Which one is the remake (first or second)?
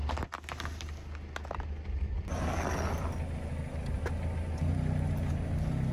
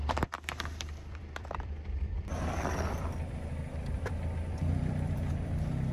second